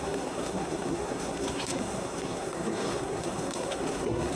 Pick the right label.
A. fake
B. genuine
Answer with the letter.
A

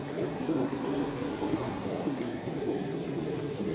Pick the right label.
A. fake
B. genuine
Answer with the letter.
A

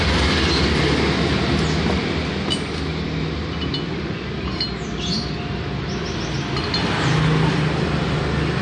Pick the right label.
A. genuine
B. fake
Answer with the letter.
A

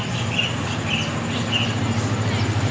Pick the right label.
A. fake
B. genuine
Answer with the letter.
B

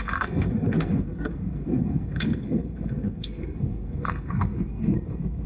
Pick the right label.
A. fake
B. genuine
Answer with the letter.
A